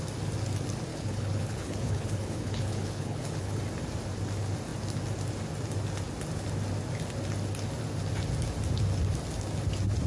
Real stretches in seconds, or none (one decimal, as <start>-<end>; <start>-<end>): 0.0-0.9; 3.6-10.1